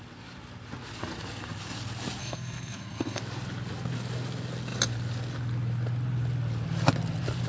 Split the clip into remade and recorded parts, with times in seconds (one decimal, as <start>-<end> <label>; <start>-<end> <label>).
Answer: 0.0-2.2 recorded; 2.2-3.2 remade; 3.2-7.5 recorded